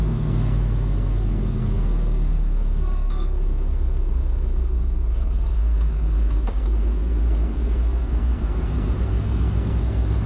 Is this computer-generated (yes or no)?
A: yes